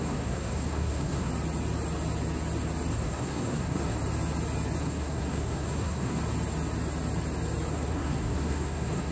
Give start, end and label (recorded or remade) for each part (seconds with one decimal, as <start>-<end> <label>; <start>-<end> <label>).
0.0-1.3 remade; 1.3-2.9 recorded; 2.9-4.0 remade; 4.0-4.8 recorded; 4.8-6.2 remade; 6.2-7.7 recorded; 7.7-9.1 remade